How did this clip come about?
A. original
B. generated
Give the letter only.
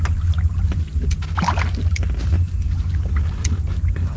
A